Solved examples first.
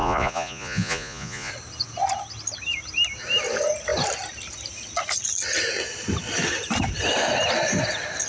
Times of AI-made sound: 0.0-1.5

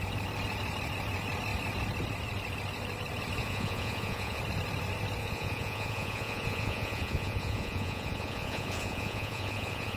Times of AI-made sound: 3.4-4.4; 5.2-10.0

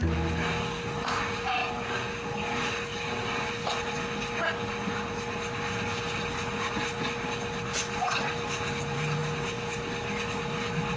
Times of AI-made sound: none

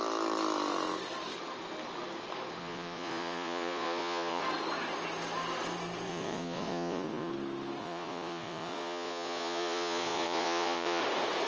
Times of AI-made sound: 2.6-4.4; 6.1-7.3; 7.8-11.0